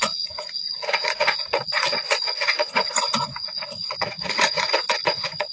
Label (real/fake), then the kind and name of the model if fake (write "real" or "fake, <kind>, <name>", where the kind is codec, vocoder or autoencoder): fake, vocoder, Vocos